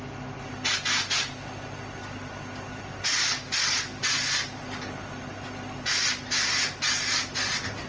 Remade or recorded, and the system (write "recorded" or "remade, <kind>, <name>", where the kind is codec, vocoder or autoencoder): recorded